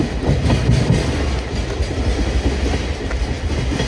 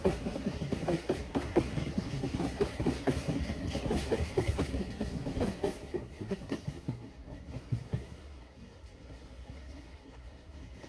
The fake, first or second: second